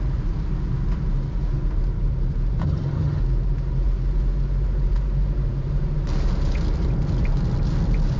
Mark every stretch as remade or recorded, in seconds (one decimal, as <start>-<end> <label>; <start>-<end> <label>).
0.0-2.6 recorded; 2.6-3.2 remade; 3.2-8.2 recorded